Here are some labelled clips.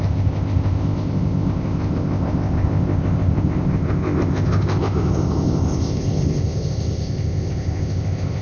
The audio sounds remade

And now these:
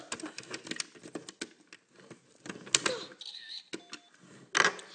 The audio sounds recorded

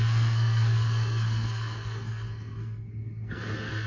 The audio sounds remade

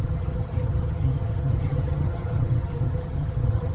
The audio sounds remade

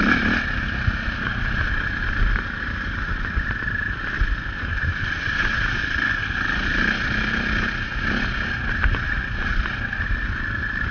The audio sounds recorded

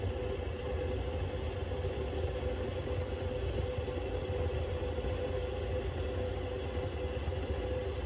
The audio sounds recorded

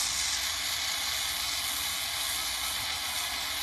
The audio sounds recorded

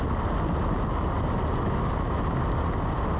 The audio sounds recorded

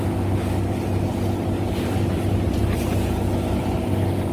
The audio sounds recorded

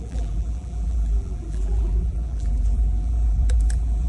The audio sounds remade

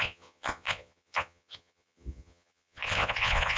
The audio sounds remade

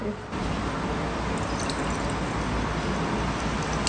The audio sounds recorded